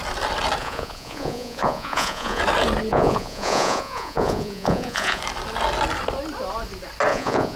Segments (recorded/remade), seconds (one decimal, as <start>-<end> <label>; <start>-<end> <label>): 0.0-0.6 recorded; 0.6-2.4 remade; 2.4-2.9 recorded; 2.9-5.2 remade; 5.2-7.1 recorded; 7.1-7.6 remade